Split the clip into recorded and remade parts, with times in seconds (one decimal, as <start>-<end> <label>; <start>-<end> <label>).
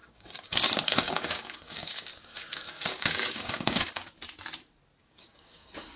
0.0-4.0 remade; 4.0-5.0 recorded; 5.0-6.0 remade